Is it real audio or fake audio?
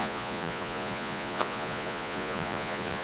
fake